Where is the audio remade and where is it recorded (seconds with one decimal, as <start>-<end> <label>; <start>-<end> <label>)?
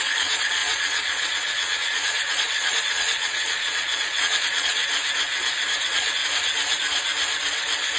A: 0.0-4.8 remade; 4.8-5.8 recorded; 5.8-6.2 remade; 6.2-8.0 recorded